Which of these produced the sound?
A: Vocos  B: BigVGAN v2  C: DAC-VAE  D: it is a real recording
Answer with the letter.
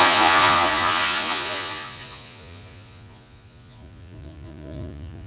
A